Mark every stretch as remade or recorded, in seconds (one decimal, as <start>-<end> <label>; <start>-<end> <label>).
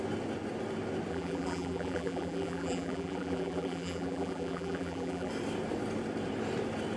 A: 0.0-1.1 recorded; 1.1-5.3 remade; 5.3-7.0 recorded